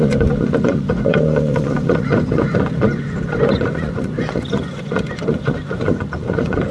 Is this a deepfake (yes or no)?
yes